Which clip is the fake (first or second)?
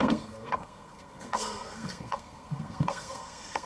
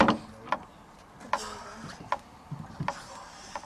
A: first